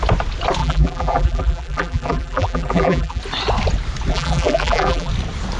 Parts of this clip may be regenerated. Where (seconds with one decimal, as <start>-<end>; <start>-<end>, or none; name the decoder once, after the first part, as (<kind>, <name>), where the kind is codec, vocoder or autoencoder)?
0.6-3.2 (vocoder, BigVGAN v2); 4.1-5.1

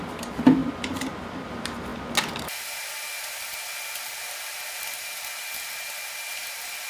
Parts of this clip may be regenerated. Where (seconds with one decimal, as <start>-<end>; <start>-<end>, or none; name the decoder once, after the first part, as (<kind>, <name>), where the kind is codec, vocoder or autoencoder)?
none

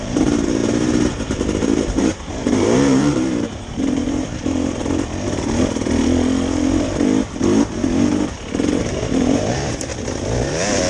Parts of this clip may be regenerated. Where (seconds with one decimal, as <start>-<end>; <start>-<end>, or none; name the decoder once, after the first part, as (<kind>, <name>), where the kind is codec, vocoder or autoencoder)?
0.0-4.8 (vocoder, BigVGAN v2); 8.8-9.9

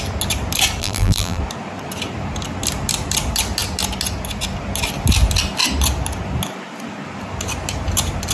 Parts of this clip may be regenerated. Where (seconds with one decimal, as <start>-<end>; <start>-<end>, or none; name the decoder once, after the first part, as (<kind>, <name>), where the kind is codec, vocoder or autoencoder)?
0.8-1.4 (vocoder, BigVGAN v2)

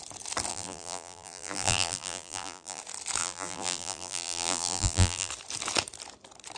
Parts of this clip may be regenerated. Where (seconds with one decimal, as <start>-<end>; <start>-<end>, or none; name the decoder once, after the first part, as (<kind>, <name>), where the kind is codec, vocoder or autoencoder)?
0.5-2.8 (vocoder, BigVGAN v2); 3.2-5.3

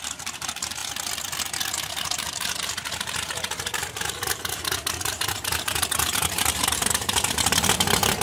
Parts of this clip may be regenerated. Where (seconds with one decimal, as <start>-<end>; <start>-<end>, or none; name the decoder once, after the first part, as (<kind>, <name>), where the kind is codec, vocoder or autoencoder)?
0.0-0.8 (vocoder, BigVGAN v2); 1.8-8.2

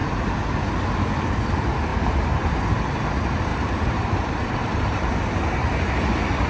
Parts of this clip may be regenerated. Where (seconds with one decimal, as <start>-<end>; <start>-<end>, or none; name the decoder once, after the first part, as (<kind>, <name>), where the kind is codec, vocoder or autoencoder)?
3.5-5.4 (vocoder, BigVGAN v2)